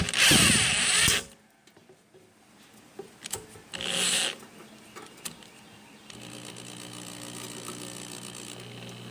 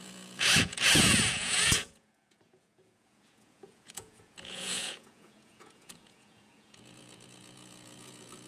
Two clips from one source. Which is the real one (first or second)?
first